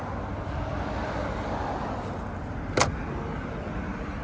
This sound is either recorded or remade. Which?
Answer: recorded